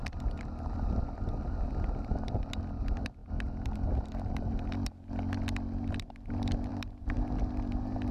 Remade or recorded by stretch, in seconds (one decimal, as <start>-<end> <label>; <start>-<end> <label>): 0.0-8.1 recorded

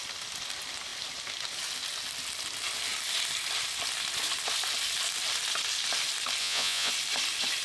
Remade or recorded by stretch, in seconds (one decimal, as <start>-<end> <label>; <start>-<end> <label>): 0.0-6.4 recorded; 6.4-6.9 remade; 6.9-7.6 recorded

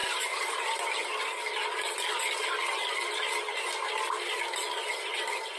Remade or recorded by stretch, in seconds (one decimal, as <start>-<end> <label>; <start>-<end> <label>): 0.0-0.8 remade; 0.8-5.6 recorded

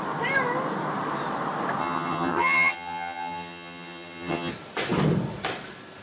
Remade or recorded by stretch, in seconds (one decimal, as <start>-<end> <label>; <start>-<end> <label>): 0.0-1.8 recorded; 1.8-4.5 remade; 4.5-6.0 recorded

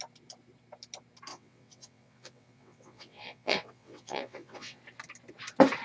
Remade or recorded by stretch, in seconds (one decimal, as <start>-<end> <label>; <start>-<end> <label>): 0.0-1.3 recorded; 1.3-4.8 remade; 4.8-5.8 recorded